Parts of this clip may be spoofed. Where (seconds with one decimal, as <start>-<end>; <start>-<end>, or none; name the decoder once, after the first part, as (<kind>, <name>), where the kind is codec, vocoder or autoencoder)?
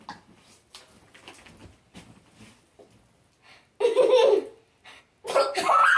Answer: none